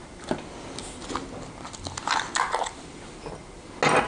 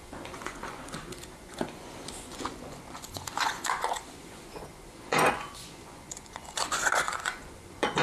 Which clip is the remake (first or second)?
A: second